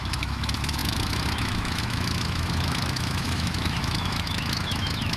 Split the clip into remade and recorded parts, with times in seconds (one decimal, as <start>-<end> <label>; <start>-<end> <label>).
0.0-5.2 remade